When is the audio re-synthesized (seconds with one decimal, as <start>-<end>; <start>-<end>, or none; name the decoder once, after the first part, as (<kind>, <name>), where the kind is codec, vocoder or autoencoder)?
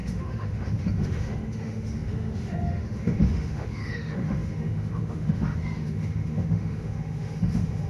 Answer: 0.0-7.9 (autoencoder, DAC-VAE)